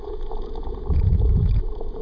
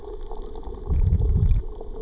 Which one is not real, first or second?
first